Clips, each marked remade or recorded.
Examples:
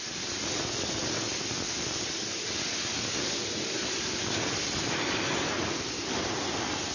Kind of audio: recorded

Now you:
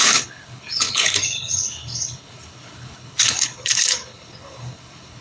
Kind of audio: remade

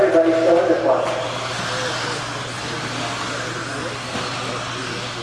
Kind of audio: recorded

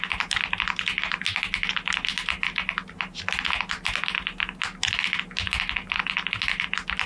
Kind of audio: recorded